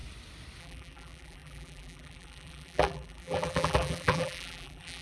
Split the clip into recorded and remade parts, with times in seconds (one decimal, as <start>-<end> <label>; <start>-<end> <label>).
0.0-0.6 recorded; 0.6-5.0 remade